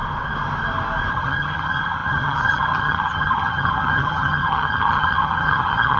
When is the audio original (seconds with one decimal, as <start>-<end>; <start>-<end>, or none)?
0.0-1.1